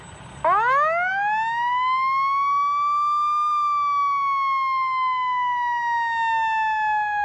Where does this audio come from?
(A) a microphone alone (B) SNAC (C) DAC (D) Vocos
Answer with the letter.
A